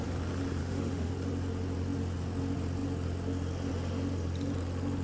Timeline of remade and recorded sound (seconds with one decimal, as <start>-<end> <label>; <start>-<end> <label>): 0.0-0.6 recorded; 0.6-1.1 remade; 1.1-5.0 recorded